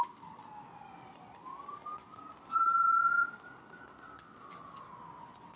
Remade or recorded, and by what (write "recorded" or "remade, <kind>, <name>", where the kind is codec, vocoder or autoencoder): recorded